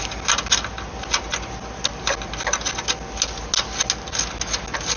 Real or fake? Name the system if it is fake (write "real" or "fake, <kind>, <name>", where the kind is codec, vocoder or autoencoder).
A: real